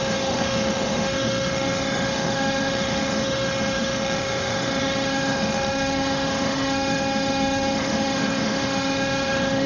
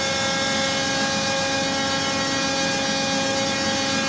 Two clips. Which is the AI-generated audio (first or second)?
first